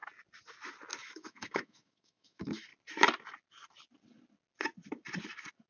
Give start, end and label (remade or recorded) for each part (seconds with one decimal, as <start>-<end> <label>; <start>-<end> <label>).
0.0-1.0 recorded; 1.0-2.7 remade; 2.7-5.7 recorded